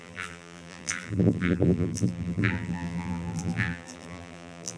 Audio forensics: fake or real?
fake